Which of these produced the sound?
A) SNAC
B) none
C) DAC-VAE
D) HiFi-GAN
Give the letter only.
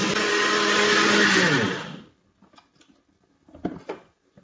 B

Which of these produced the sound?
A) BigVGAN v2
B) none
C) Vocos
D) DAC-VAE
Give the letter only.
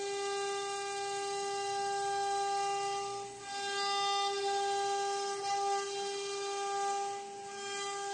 B